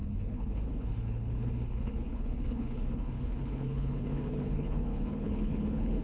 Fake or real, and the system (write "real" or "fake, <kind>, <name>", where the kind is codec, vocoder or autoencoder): fake, codec, HILCodec